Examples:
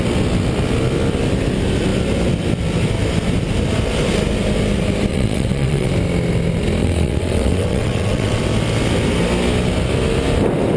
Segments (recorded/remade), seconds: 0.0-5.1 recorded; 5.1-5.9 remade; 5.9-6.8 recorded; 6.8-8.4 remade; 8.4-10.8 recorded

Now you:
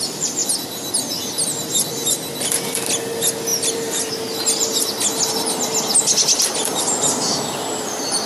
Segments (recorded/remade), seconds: 0.0-3.5 recorded; 3.5-4.1 remade; 4.1-8.3 recorded

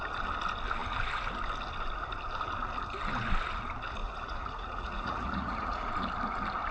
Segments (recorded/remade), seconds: 0.0-4.0 recorded; 4.0-5.9 remade; 5.9-6.7 recorded

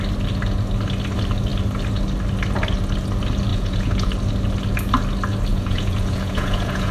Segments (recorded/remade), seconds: 0.0-3.5 recorded; 3.5-4.1 remade; 4.1-5.5 recorded; 5.5-6.9 remade

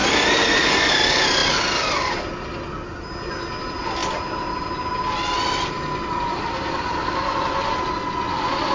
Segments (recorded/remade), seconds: 0.0-8.7 recorded

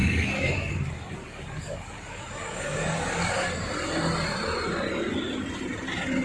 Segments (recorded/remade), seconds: 0.0-3.7 remade; 3.7-6.2 recorded

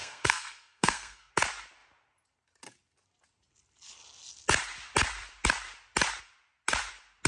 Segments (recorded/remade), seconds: 0.0-1.3 remade; 1.3-7.3 recorded

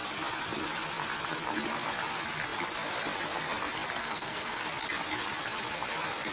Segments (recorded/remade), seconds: 0.0-4.0 recorded; 4.0-4.6 remade; 4.6-6.3 recorded